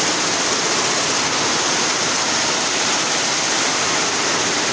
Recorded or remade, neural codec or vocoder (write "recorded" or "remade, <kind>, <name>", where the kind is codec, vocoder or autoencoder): recorded